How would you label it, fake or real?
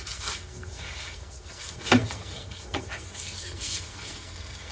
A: fake